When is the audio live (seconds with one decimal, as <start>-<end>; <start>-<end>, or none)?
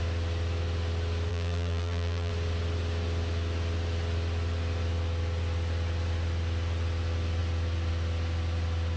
0.0-1.3; 2.3-9.0